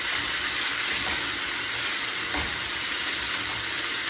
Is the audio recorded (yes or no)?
no